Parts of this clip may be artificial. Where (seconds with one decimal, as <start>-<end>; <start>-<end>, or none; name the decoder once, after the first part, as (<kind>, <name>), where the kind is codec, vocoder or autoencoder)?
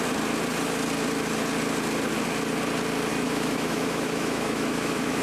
3.1-5.2 (autoencoder, DAC-VAE)